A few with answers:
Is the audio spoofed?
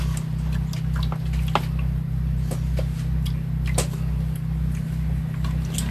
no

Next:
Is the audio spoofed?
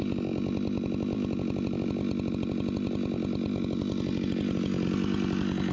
no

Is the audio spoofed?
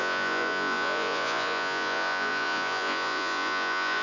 yes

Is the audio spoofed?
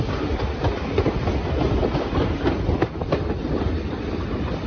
no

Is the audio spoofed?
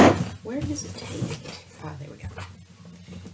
no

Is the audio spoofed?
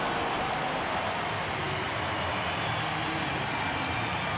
no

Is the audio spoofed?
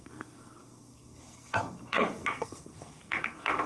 yes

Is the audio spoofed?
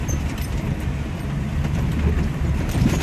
yes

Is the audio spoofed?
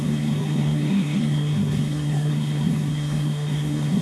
yes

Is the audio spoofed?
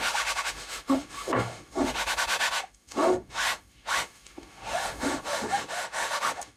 yes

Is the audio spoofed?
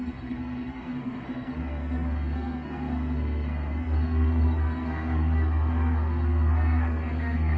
yes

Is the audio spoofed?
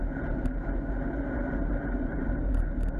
no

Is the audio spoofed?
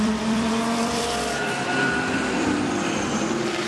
yes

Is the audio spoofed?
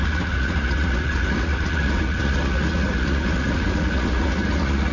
yes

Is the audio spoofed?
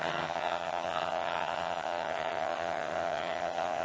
yes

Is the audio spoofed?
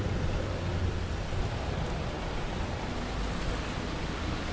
no